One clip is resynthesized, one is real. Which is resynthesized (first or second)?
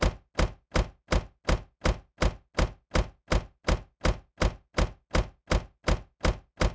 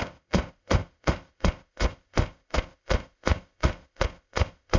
second